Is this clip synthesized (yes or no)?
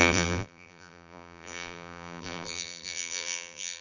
yes